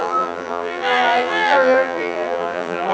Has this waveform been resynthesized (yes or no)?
yes